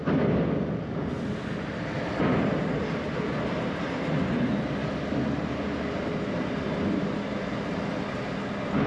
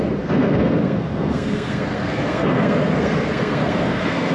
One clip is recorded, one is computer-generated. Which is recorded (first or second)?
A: first